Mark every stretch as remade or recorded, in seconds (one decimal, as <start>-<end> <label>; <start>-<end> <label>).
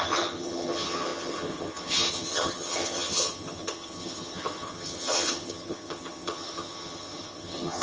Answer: 0.0-7.8 remade